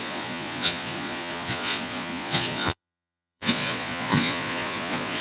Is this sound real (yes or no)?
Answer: no